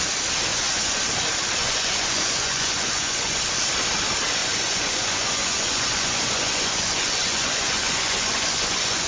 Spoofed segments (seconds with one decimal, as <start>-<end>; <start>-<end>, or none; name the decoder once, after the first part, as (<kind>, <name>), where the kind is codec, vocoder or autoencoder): 0.5-1.0 (vocoder, Vocos); 1.6-3.4; 4.4-9.1